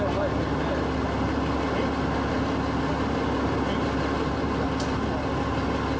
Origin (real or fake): real